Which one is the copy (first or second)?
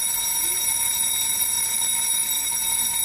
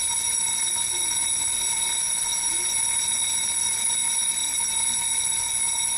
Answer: first